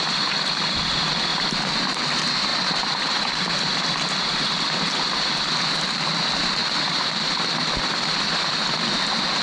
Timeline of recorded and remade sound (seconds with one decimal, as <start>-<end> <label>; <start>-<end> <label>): 0.0-2.5 recorded; 2.5-3.3 remade; 3.3-6.6 recorded; 6.6-7.8 remade; 7.8-9.4 recorded